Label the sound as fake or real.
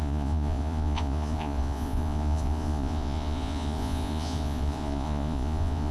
fake